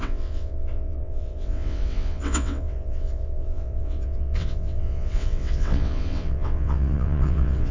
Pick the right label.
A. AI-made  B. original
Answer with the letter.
A